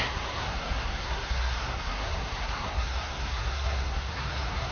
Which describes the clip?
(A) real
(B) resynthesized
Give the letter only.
B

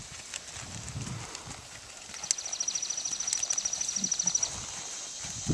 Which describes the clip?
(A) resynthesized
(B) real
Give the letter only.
B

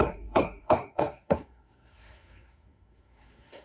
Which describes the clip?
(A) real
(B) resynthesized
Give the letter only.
B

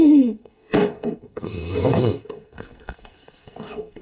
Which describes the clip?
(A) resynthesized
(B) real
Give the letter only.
A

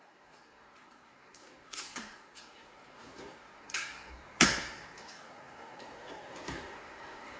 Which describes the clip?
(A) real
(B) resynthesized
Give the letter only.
B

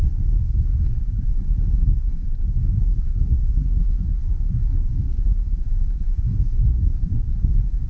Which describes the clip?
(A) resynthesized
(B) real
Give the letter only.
A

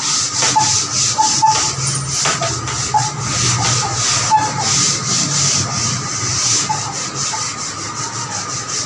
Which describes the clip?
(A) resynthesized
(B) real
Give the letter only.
B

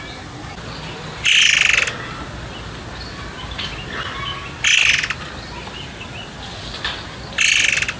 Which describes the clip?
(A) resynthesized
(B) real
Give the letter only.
B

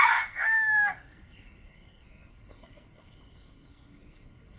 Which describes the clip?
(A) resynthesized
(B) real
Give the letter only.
A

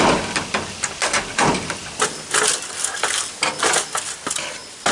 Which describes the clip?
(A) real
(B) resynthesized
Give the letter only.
A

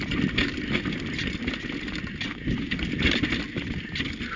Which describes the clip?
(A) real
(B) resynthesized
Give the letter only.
A